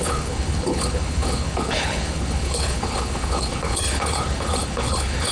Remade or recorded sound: remade